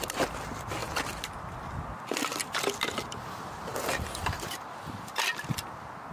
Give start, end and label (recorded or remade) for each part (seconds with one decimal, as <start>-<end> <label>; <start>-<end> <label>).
0.0-3.7 recorded; 3.7-4.8 remade; 4.8-6.1 recorded